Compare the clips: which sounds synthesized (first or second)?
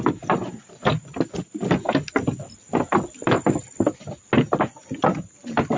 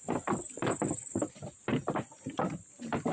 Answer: second